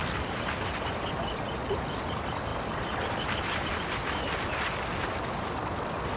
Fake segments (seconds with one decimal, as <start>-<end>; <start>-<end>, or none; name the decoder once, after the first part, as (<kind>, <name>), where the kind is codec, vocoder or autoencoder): none